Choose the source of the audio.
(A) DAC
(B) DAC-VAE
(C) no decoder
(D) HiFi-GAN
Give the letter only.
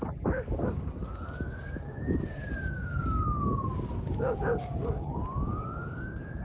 A